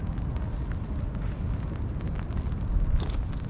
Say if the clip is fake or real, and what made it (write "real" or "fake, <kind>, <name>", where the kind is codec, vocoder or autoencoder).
real